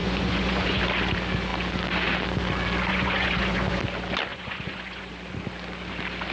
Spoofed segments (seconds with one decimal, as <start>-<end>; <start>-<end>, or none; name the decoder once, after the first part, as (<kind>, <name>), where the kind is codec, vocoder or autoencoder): 0.0-0.8 (vocoder, Vocos); 2.9-3.8; 4.3-5.1